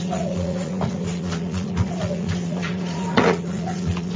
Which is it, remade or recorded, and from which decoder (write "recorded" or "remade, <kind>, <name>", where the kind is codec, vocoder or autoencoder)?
remade, vocoder, Vocos